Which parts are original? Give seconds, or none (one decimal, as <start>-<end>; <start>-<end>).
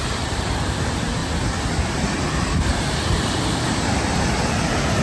1.2-1.9